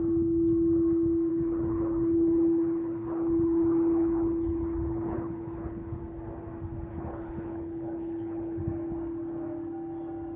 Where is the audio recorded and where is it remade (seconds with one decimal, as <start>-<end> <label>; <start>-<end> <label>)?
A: 0.0-1.3 recorded; 1.3-6.0 remade; 6.0-6.9 recorded; 6.9-8.6 remade; 8.6-10.4 recorded